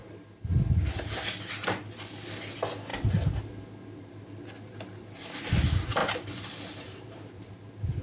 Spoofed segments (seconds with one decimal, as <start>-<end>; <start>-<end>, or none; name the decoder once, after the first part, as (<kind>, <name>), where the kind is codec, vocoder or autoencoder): 6.0-7.5 (vocoder, BigVGAN v2)